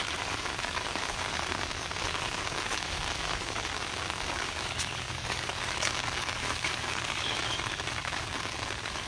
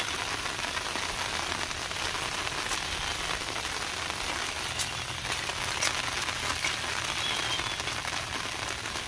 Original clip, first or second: second